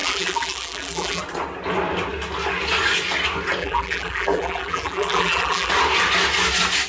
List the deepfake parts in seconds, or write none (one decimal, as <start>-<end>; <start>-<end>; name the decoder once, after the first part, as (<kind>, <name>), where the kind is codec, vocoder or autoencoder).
0.0-1.2 (vocoder, BigVGAN v2); 3.6-5.7